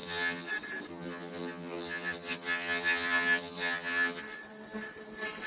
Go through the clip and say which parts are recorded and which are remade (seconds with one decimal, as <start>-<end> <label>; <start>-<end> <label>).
0.0-0.5 remade; 0.5-0.9 recorded; 0.9-4.2 remade; 4.2-5.5 recorded